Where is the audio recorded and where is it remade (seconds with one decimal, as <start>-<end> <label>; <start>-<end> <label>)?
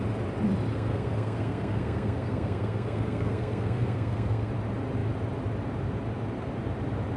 0.0-0.7 recorded; 0.7-4.5 remade; 4.5-7.2 recorded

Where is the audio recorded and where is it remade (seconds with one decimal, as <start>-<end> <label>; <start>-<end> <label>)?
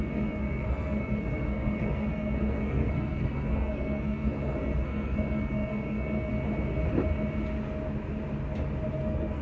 0.0-6.3 remade; 6.3-9.0 recorded; 9.0-9.4 remade